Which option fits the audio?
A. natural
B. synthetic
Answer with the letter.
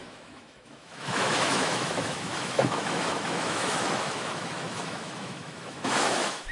B